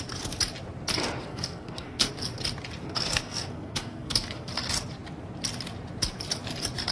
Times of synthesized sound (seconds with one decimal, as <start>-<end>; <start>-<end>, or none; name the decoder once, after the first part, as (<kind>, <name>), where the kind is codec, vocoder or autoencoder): 1.3-2.1 (codec, SNAC); 2.8-4.5